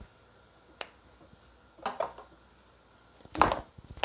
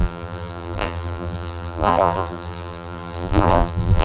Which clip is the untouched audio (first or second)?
first